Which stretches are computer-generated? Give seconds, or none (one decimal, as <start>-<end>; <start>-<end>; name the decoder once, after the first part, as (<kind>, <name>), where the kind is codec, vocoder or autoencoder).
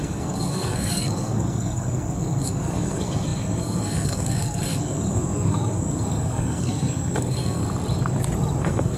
0.0-7.6 (codec, SNAC); 8.6-9.0